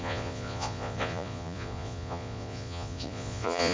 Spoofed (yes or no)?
yes